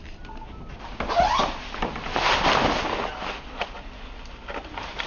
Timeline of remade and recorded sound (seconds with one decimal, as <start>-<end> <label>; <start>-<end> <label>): 0.0-5.1 recorded